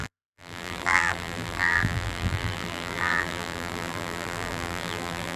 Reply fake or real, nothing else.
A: fake